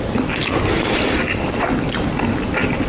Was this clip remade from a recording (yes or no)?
no